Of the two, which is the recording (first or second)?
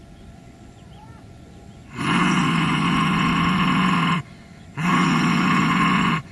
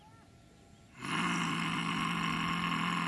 second